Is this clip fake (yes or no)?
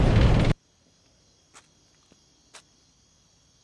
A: no